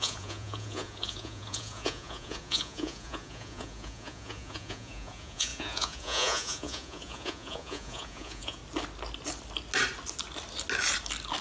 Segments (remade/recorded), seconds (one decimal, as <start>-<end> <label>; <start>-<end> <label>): 0.0-8.6 remade; 8.6-11.4 recorded